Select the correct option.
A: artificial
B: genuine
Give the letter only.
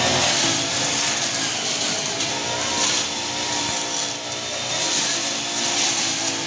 B